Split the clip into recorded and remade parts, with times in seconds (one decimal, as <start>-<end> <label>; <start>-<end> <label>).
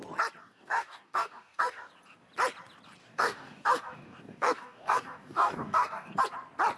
0.0-0.4 recorded; 0.4-1.9 remade; 1.9-3.0 recorded; 3.0-6.2 remade; 6.2-6.8 recorded